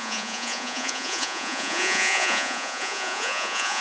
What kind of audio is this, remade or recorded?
remade